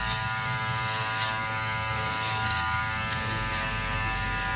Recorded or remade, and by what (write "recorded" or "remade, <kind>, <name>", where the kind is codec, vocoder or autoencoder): remade, codec, DAC